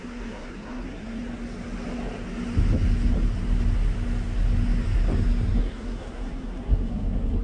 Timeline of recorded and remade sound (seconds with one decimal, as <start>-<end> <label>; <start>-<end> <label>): 0.0-1.2 remade; 1.2-5.6 recorded; 5.6-7.4 remade